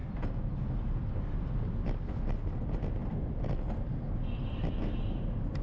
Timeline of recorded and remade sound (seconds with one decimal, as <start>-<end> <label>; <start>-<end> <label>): 0.0-5.6 recorded